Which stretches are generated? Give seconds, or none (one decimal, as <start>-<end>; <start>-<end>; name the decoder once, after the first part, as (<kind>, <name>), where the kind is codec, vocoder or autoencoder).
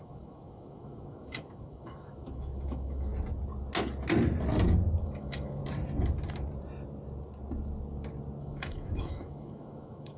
0.0-3.1 (autoencoder, DAC-VAE); 5.0-5.6; 8.4-10.2